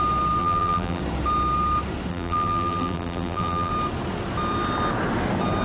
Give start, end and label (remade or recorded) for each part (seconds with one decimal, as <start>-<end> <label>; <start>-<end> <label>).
0.0-0.4 recorded; 0.4-1.0 remade; 1.0-2.1 recorded; 2.1-3.7 remade; 3.7-5.6 recorded